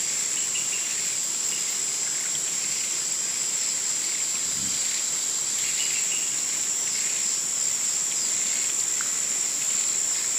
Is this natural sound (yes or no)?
yes